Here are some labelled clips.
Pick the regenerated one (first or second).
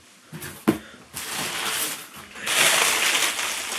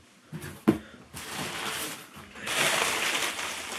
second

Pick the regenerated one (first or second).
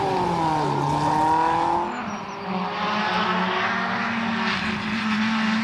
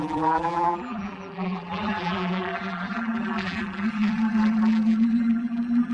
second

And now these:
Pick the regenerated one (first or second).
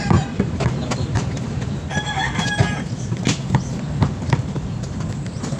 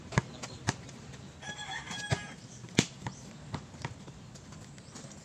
first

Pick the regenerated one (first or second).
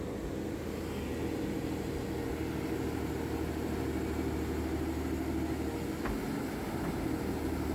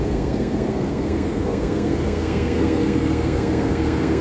second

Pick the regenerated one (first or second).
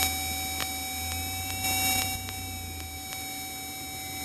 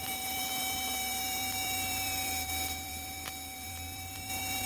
second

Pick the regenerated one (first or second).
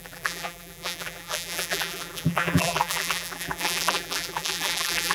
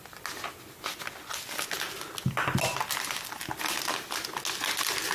first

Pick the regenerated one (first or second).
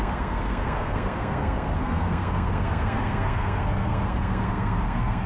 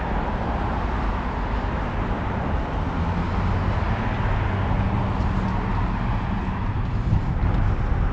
first